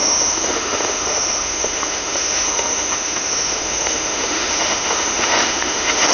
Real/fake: fake